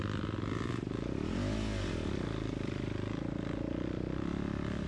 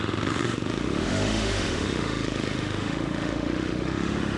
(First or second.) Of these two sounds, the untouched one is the first